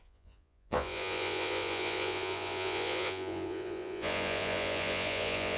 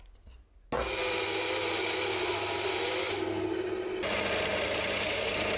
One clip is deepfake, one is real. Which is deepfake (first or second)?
first